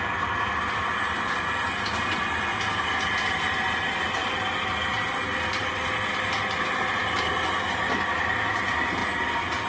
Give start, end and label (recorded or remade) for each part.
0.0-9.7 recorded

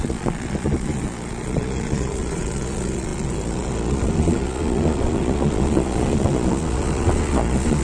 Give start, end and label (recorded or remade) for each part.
0.0-7.8 remade

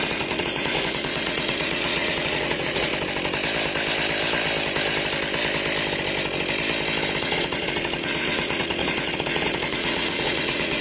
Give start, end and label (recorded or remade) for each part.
0.0-2.9 remade; 2.9-7.2 recorded; 7.2-10.8 remade

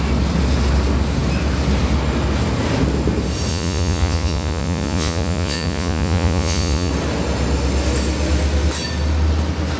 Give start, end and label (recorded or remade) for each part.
0.0-3.5 recorded; 3.5-6.9 remade; 6.9-9.8 recorded

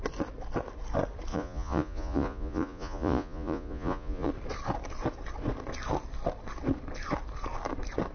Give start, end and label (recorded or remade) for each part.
0.0-1.3 recorded; 1.3-4.3 remade; 4.3-8.1 recorded